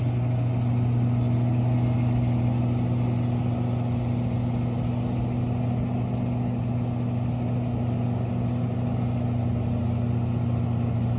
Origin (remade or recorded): recorded